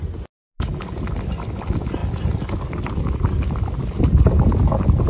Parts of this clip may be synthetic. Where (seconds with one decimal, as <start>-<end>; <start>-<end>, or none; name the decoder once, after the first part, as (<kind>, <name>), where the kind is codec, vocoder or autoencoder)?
none